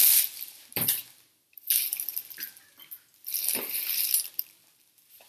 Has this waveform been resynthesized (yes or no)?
no